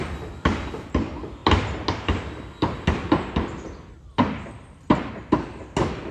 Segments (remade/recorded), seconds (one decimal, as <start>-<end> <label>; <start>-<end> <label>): 0.0-6.1 recorded